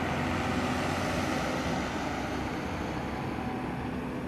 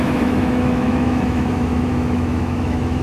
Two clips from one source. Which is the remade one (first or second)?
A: second